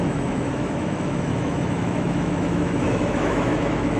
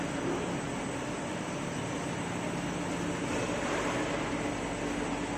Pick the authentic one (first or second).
second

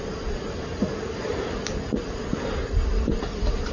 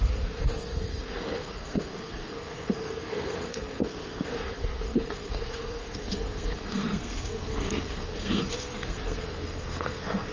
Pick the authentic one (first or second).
first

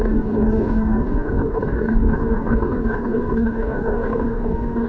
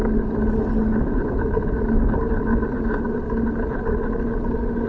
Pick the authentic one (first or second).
second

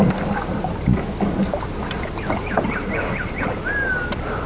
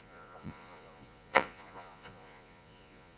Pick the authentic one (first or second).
first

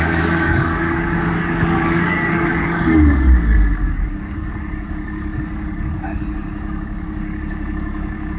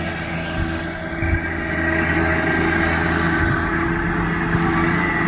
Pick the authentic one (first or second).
second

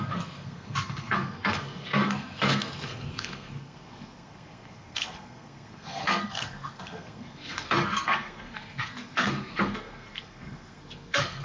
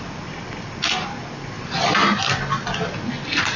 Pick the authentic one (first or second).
second